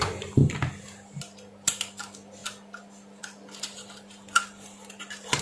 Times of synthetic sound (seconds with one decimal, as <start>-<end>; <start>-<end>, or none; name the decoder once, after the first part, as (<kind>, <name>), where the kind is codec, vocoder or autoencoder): 0.0-0.4 (vocoder, BigVGAN v2); 1.8-2.4; 3.2-5.4